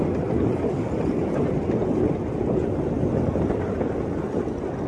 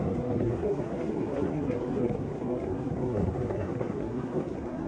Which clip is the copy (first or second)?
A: second